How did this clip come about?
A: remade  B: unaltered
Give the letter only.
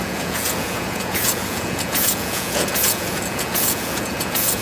A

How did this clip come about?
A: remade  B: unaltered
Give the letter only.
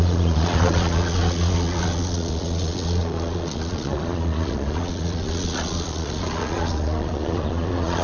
A